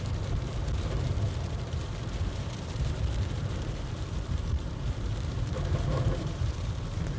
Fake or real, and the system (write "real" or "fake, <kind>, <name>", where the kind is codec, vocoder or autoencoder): fake, vocoder, BigVGAN v2